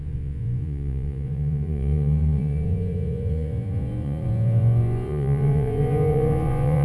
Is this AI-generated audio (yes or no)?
yes